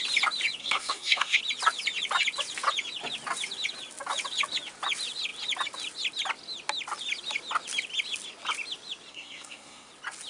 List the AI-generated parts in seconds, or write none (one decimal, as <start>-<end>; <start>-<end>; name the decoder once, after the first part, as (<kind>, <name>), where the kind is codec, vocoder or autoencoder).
0.6-1.4 (codec, SNAC); 9.1-9.9